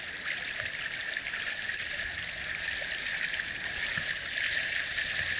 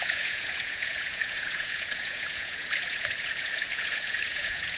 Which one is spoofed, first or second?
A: second